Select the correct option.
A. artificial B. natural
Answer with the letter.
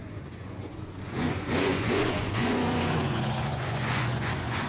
A